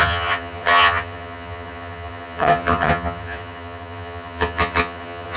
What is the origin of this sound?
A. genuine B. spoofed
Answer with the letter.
B